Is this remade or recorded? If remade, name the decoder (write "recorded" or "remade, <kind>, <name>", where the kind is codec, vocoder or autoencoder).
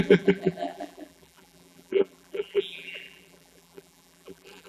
remade, vocoder, BigVGAN v2